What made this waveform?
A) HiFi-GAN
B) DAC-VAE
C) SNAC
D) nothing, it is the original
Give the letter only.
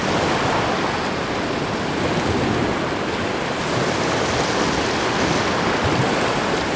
D